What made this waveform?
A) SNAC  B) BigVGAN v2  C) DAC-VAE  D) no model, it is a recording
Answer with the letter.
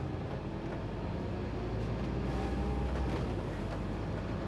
D